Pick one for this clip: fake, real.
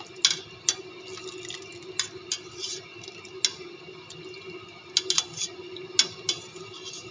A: real